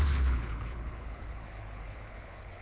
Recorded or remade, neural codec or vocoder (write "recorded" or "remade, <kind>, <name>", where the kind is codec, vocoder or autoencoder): remade, codec, HILCodec